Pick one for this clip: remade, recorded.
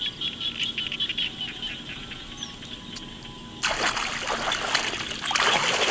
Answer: recorded